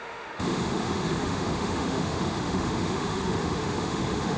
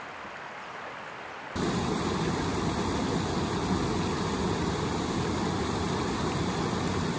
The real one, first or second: second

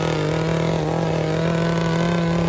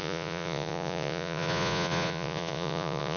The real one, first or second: first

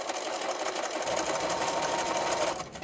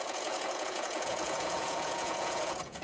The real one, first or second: first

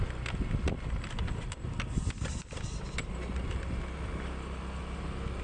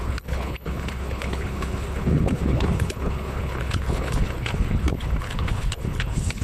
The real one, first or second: first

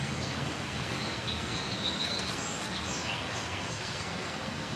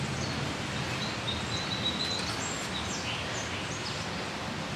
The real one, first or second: second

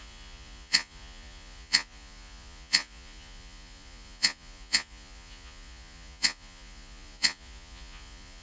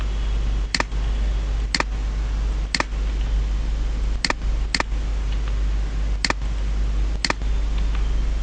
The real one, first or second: second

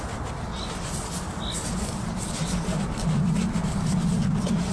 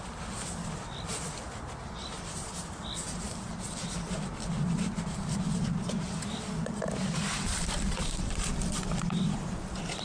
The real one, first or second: first